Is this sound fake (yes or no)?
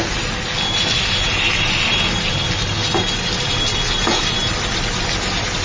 no